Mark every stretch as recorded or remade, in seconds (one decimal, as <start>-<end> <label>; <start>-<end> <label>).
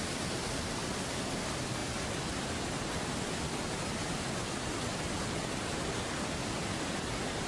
0.0-7.5 recorded